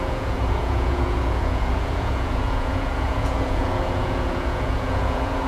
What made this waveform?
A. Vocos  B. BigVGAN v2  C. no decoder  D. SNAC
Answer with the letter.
A